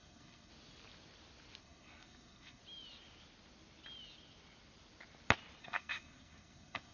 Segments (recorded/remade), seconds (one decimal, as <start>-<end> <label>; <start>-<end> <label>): 0.0-0.5 remade; 0.5-1.6 recorded; 1.6-2.6 remade; 2.6-5.6 recorded; 5.6-6.9 remade